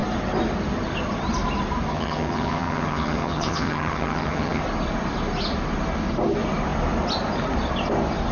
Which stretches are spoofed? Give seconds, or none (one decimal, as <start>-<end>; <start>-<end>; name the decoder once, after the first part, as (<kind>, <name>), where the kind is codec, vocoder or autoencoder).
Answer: 1.9-4.6 (vocoder, HiFi-GAN)